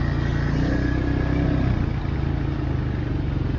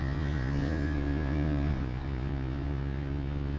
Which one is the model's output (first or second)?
second